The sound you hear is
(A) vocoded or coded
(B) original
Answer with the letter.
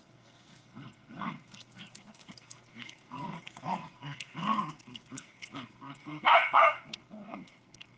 A